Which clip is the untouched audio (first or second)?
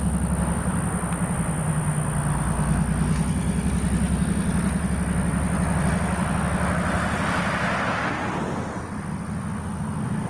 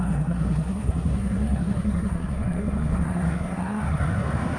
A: first